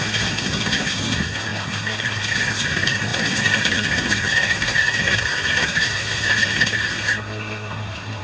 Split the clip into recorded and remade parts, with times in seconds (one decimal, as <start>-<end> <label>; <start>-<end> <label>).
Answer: 0.0-8.2 remade